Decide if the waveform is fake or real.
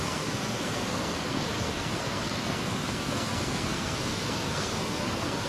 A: fake